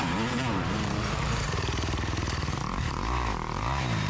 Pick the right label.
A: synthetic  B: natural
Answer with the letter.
A